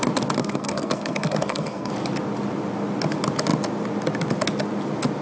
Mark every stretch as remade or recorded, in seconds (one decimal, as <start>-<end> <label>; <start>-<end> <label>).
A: 0.0-0.4 recorded; 0.4-1.9 remade; 1.9-5.2 recorded